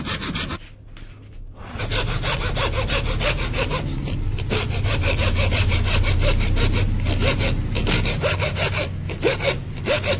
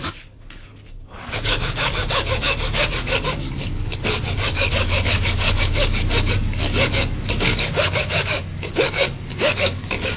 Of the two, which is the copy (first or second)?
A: second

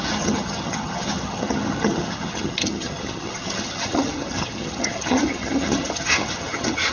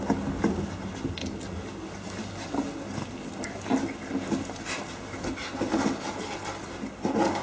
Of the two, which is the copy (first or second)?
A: first